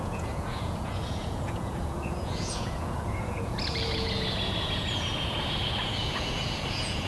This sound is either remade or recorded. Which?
remade